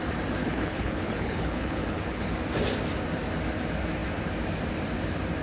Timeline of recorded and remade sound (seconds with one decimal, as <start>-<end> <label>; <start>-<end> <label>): 0.0-0.4 recorded; 0.4-2.3 remade; 2.3-5.4 recorded